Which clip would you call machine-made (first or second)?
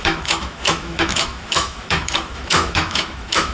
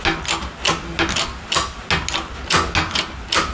first